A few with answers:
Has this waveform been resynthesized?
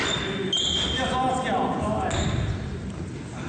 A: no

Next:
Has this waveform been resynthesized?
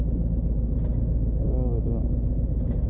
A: no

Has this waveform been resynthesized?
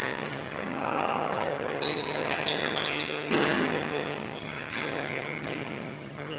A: yes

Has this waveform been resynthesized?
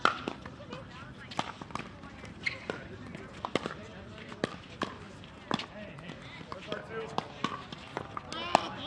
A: no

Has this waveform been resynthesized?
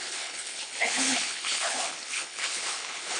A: yes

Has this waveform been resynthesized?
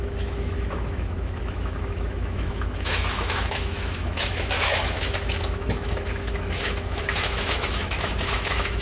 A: yes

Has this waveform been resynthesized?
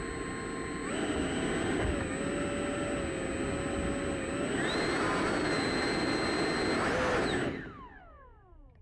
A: no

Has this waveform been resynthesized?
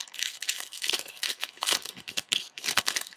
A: yes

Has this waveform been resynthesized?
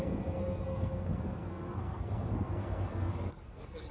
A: yes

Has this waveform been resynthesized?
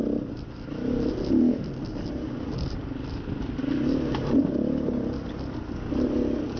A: no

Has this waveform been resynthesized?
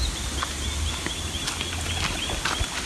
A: no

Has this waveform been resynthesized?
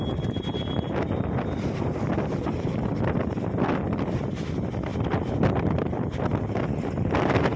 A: no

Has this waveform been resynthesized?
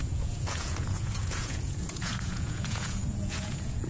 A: yes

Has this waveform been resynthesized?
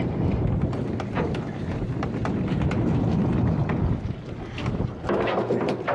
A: no